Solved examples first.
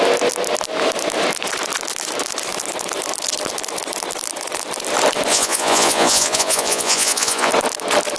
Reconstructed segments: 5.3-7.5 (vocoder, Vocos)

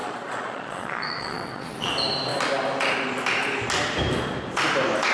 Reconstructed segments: 0.0-1.9 (vocoder, Vocos)

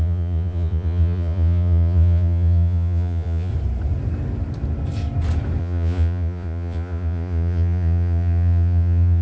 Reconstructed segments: 0.0-3.5 (vocoder, Vocos); 5.6-9.2

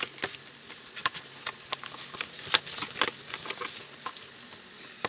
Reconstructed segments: none

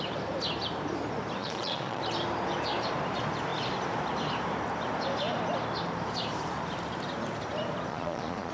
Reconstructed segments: 1.4-2.0 (vocoder, Vocos); 7.9-8.5